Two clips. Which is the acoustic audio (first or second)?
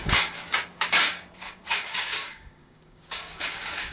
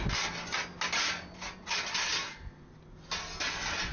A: second